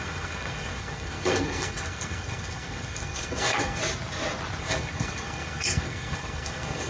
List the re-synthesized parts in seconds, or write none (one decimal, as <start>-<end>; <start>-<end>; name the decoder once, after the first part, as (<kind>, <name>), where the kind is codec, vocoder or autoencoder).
0.0-3.8 (codec, SNAC); 4.6-6.9